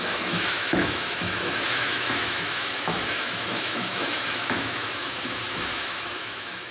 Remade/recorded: remade